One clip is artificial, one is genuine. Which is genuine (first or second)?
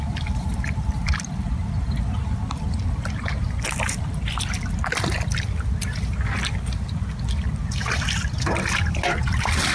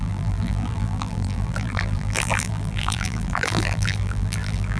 first